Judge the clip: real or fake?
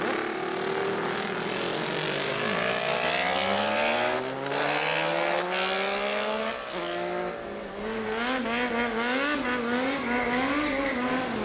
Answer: real